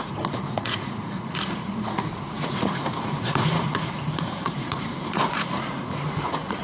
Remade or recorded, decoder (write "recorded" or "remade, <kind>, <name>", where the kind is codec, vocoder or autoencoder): remade, vocoder, Vocos